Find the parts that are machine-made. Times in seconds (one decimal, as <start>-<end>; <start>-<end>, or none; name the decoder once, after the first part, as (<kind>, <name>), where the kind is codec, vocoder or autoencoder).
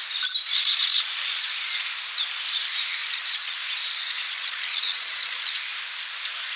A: 0.9-1.5 (vocoder, Vocos); 3.0-3.5; 4.2-5.5